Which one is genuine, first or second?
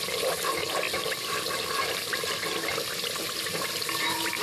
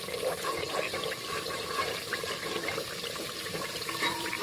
first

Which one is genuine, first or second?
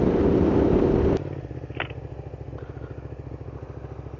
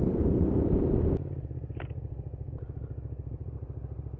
first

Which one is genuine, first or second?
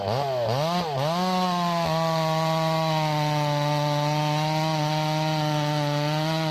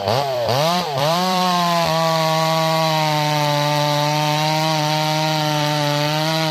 first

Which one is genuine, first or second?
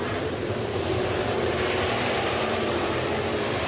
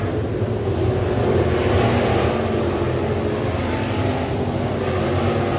second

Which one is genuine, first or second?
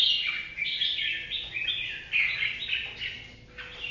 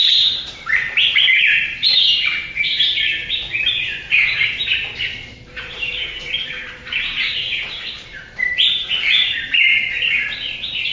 first